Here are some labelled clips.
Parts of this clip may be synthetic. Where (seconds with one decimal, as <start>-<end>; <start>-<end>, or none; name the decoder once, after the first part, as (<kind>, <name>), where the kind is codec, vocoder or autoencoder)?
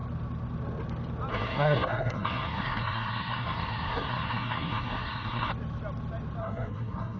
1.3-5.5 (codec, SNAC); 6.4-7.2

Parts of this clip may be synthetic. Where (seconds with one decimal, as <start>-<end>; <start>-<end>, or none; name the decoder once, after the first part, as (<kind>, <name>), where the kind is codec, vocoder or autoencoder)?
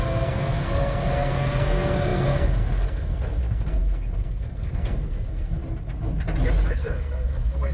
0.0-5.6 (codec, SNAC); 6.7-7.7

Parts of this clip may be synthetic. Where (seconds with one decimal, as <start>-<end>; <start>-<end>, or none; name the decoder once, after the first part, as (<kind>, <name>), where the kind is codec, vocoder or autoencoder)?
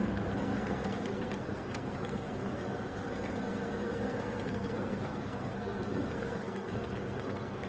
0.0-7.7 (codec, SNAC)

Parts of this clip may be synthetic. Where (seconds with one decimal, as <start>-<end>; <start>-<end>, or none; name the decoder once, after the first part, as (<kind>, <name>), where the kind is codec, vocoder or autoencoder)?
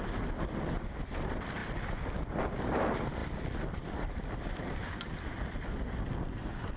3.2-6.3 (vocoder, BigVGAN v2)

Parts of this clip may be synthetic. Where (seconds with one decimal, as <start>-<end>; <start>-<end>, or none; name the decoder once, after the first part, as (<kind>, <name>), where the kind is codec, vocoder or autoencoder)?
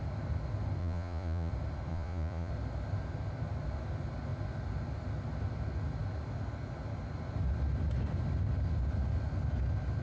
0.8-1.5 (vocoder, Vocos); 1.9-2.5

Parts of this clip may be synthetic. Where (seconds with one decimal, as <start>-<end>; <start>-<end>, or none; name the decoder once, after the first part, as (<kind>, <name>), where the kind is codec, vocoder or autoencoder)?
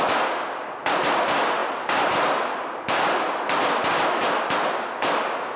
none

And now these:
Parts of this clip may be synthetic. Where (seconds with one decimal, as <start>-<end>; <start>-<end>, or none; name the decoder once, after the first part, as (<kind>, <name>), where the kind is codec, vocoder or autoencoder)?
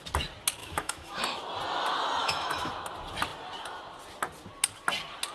0.6-1.2 (autoencoder, DAC-VAE); 2.2-2.7